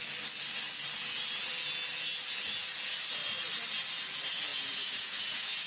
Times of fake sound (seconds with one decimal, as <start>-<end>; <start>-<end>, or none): 4.5-5.7